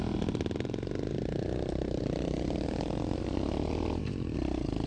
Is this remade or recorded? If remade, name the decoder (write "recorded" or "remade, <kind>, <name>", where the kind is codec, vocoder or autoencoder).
recorded